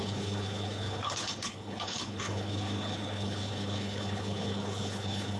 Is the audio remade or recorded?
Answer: remade